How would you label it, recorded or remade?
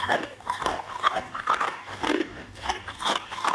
remade